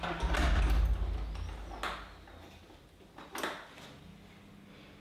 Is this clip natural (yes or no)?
yes